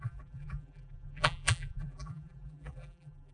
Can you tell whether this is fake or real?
fake